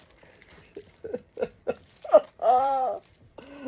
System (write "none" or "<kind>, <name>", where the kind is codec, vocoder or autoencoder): vocoder, BigVGAN v2